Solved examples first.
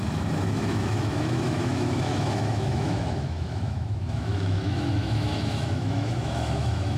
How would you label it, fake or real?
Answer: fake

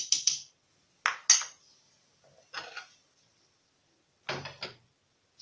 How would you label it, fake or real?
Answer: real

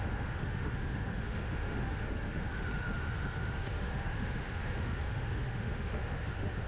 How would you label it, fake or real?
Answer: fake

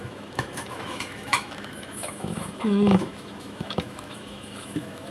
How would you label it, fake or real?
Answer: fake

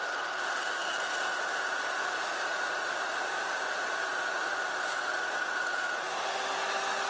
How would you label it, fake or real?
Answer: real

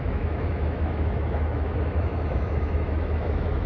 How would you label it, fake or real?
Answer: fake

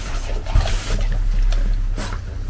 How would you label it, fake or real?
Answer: real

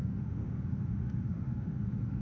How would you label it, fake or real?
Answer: fake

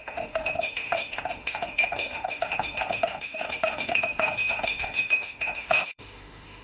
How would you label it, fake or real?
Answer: fake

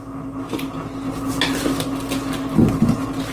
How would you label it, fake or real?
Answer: real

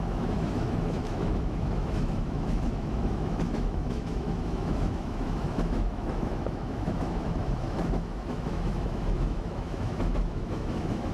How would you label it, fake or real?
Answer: fake